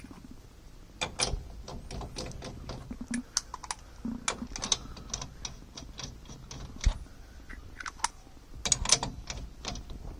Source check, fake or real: real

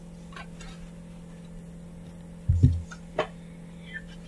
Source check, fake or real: real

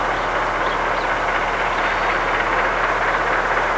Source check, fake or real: real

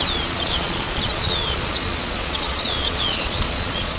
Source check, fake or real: fake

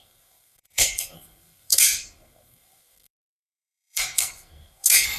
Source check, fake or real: fake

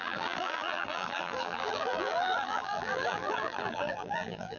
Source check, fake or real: fake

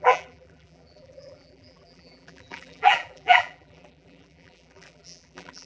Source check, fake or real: fake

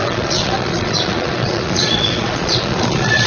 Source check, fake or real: fake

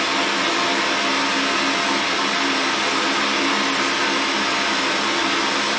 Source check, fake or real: real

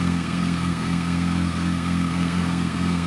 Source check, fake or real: fake